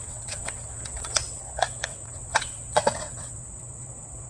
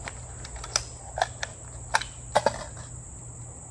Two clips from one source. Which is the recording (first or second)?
second